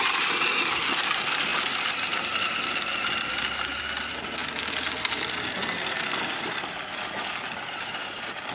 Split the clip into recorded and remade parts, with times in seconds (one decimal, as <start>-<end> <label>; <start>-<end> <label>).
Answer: 0.0-8.5 recorded